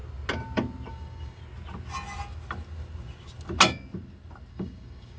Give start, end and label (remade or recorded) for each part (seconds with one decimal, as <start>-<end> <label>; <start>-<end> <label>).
0.0-0.9 recorded; 0.9-1.4 remade; 1.4-4.5 recorded; 4.5-5.2 remade